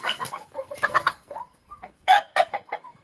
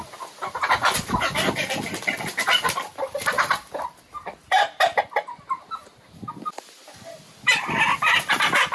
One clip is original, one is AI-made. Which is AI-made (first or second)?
first